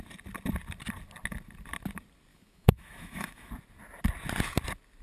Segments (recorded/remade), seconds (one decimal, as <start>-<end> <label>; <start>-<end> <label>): 0.0-2.3 recorded; 2.3-3.5 remade; 3.5-5.0 recorded